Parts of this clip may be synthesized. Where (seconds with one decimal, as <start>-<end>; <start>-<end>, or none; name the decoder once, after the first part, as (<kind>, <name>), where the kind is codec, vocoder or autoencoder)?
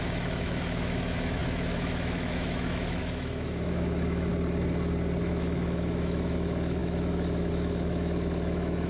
0.0-4.3 (autoencoder, DAC-VAE); 5.2-8.9